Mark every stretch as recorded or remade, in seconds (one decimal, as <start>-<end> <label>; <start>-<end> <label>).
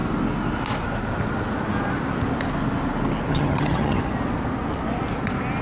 0.0-3.3 recorded; 3.3-4.0 remade; 4.0-5.6 recorded